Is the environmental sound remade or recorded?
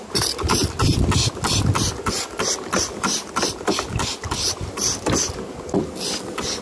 recorded